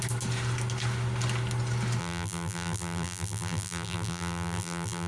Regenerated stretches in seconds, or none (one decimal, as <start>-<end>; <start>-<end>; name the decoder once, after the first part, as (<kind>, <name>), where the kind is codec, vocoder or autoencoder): 2.0-5.1 (vocoder, BigVGAN v2)